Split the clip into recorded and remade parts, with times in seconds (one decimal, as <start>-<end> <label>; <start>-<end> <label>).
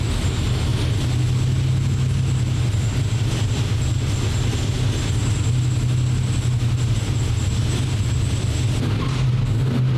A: 0.0-10.0 recorded